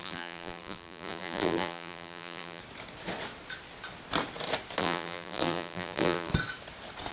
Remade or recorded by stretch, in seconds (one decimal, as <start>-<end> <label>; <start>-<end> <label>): 0.0-2.6 remade; 2.6-4.8 recorded; 4.8-6.3 remade; 6.3-7.1 recorded